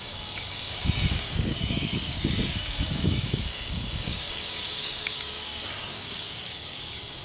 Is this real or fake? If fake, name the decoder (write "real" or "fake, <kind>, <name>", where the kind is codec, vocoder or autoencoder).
fake, codec, DAC